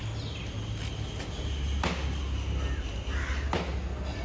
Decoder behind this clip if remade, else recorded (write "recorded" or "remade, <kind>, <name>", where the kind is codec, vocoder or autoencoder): recorded